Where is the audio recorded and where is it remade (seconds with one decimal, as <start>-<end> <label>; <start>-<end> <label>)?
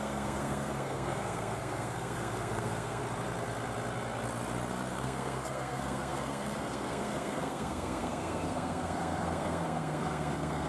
0.0-3.0 remade; 3.0-4.9 recorded; 4.9-10.7 remade